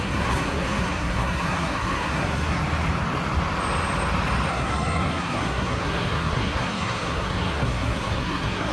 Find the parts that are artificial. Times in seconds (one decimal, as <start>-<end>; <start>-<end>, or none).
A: 0.0-2.6; 4.5-8.7